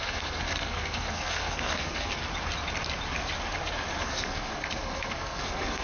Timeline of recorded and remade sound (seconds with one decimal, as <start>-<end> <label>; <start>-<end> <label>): 0.0-2.2 remade; 2.2-4.0 recorded; 4.0-5.8 remade